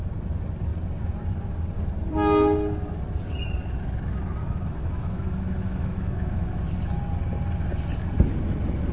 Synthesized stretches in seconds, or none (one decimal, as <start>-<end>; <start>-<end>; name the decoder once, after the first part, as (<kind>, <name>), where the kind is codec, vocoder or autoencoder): 4.4-6.6 (autoencoder, DAC-VAE)